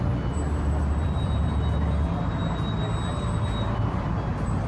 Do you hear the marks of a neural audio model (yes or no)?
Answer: no